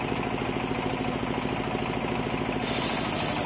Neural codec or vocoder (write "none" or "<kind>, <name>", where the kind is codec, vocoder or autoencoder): none